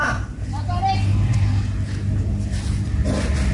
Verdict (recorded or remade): recorded